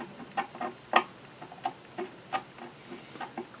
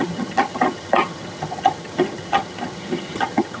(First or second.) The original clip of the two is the first